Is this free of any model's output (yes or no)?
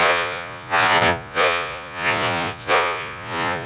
no